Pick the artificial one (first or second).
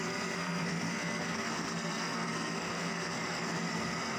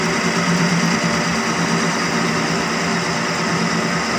first